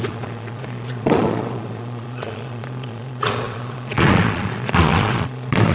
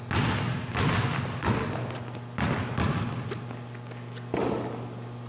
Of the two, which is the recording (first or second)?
second